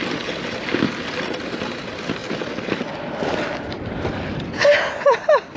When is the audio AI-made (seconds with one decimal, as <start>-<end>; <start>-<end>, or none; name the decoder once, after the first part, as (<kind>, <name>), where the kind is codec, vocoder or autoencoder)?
none